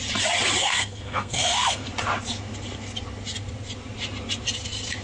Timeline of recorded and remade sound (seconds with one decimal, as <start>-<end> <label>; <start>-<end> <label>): 0.0-0.6 recorded; 0.6-1.9 remade; 1.9-5.0 recorded